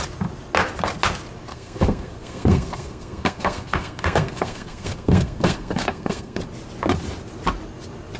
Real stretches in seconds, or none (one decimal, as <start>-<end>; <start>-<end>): 0.0-1.5; 6.4-8.2